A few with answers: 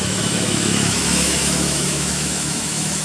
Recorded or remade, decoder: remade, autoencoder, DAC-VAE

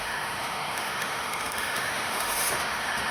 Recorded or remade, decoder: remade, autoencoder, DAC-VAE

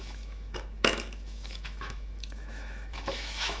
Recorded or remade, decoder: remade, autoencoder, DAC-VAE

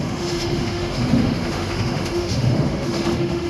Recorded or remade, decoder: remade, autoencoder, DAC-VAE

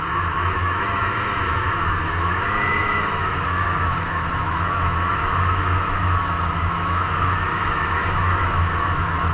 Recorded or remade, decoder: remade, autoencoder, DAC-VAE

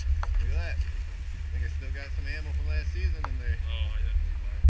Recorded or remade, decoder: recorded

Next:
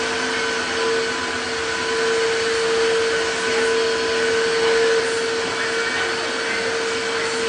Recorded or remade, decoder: recorded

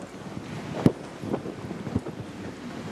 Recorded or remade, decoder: recorded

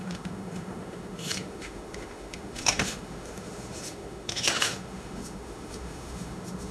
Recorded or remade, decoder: remade, autoencoder, DAC-VAE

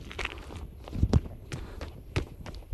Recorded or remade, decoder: recorded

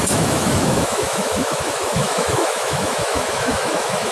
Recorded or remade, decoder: remade, autoencoder, DAC-VAE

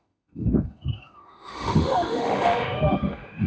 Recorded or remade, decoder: remade, autoencoder, DAC-VAE